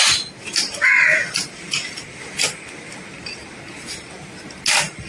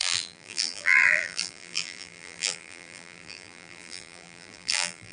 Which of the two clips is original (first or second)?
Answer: first